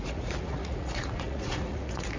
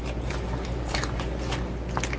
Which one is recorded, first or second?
second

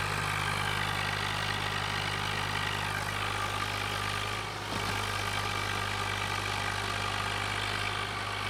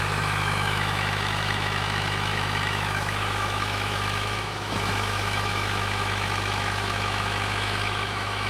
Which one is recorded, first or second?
first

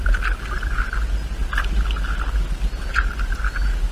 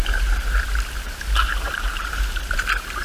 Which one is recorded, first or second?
first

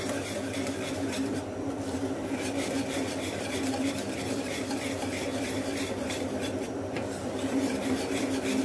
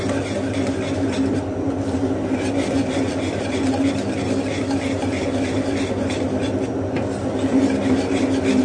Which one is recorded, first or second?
second